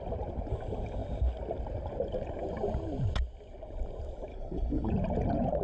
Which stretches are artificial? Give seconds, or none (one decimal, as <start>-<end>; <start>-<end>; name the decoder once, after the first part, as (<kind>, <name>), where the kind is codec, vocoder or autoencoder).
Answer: 4.3-4.9 (codec, HILCodec)